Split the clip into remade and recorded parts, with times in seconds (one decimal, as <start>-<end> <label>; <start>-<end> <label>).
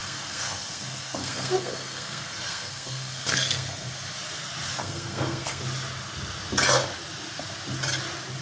0.0-3.9 remade; 3.9-4.8 recorded; 4.8-5.6 remade; 5.6-8.4 recorded